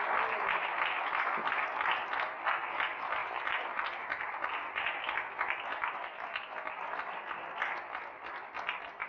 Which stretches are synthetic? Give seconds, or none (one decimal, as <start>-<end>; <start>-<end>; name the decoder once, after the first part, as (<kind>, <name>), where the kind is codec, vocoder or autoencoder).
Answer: 3.2-5.0 (vocoder, BigVGAN v2)

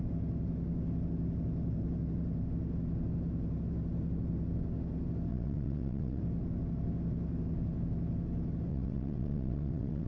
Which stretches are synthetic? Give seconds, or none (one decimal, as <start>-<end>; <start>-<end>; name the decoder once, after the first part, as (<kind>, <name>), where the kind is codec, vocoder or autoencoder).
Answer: 5.3-6.2 (vocoder, WaveNeXt); 8.7-10.1

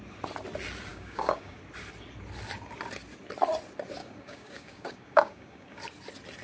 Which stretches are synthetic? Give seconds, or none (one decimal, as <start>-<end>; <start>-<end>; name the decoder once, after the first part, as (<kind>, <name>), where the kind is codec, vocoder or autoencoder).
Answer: 0.9-1.6 (codec, DAC); 4.0-5.8

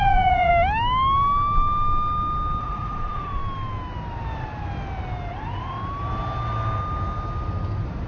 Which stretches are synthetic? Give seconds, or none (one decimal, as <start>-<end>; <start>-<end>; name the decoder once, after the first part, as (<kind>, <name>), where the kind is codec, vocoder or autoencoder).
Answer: 0.0-0.5 (vocoder, Vocos); 2.6-3.4; 5.3-5.8

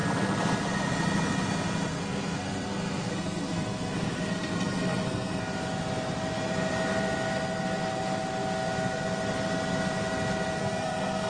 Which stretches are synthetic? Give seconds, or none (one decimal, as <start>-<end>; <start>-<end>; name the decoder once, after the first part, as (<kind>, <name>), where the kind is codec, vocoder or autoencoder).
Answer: 1.9-5.4 (codec, SNAC); 10.6-11.3